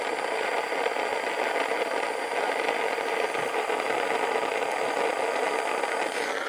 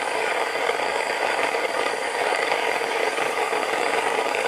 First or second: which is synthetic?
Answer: second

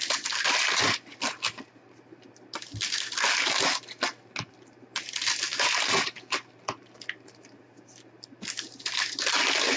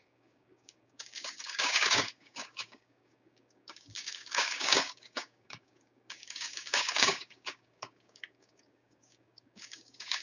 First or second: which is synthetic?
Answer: second